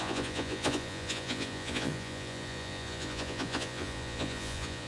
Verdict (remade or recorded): remade